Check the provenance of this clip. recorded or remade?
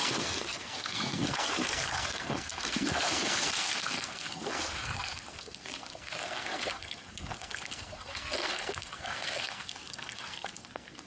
remade